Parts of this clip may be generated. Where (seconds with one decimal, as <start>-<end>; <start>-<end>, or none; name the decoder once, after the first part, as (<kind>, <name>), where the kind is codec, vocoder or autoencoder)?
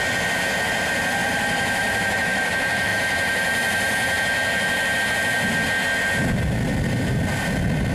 1.2-2.5 (vocoder, BigVGAN v2)